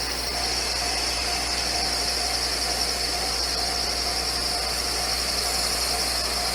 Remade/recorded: recorded